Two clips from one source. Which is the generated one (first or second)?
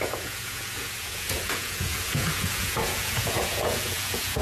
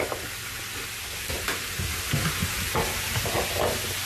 first